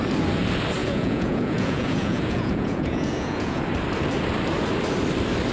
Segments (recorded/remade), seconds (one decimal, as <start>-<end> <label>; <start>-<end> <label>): 0.0-0.8 recorded; 0.8-3.6 remade; 3.6-5.5 recorded